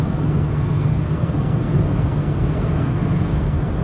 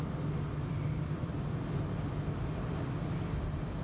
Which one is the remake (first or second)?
first